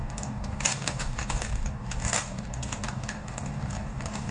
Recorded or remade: remade